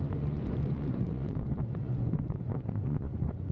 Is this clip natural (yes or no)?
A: no